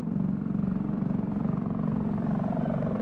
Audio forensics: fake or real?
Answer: fake